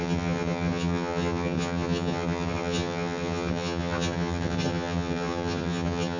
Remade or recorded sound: remade